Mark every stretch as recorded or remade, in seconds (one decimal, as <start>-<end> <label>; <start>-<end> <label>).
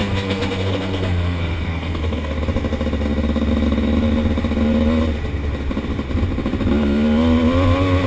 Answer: 0.0-2.3 remade; 2.3-8.1 recorded